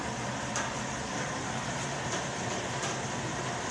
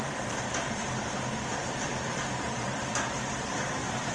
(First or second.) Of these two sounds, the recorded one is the first